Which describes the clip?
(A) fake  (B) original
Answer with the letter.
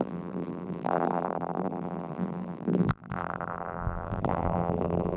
A